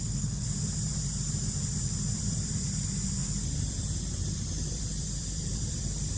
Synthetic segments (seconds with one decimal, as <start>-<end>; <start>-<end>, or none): 0.0-6.2